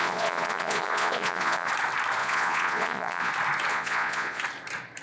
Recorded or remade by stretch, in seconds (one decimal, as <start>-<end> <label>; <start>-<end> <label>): 0.0-1.7 remade; 1.7-2.2 recorded; 2.2-3.3 remade; 3.3-3.7 recorded; 3.7-4.4 remade; 4.4-5.0 recorded